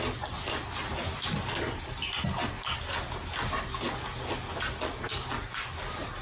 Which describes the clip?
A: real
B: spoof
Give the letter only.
A